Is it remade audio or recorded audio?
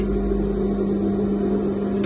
recorded